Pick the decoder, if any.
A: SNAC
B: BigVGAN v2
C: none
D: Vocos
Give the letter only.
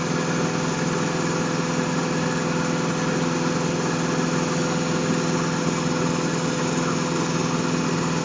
C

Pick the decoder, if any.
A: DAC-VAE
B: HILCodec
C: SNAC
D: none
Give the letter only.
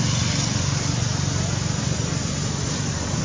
D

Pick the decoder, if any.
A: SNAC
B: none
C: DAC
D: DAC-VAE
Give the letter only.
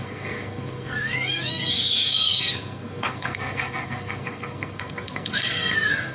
A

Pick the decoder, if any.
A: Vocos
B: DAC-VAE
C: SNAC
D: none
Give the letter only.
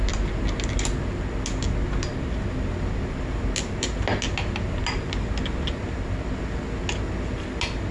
D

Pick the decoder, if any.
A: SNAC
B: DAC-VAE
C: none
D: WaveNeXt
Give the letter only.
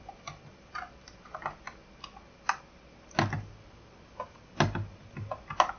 C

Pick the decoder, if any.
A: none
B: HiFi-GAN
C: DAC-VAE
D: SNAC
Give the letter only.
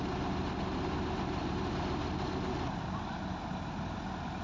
A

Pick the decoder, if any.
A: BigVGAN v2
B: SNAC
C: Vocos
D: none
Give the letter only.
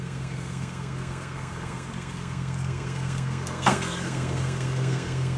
B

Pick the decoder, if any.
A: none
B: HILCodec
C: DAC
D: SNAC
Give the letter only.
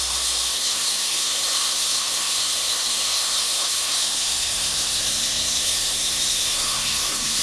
D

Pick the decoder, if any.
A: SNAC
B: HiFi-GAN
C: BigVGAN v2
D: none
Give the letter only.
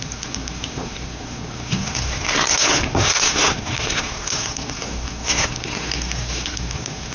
A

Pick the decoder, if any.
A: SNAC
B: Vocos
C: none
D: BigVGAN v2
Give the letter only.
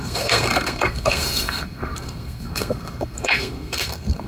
A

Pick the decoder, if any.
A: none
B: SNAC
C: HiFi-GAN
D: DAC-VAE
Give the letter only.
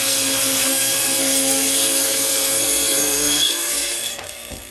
B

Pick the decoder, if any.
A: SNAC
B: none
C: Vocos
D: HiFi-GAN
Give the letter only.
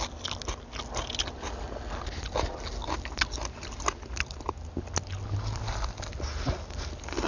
B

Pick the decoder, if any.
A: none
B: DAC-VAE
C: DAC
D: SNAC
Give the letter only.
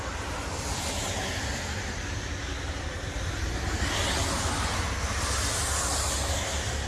A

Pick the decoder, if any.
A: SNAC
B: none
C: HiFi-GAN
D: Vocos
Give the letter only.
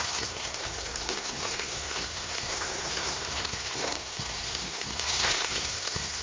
A